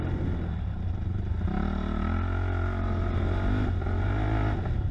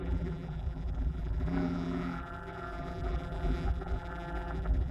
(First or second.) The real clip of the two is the first